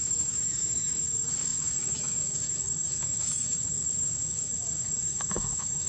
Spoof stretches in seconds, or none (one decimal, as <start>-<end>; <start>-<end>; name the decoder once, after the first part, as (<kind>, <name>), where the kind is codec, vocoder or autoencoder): 0.0-5.9 (autoencoder, DAC-VAE)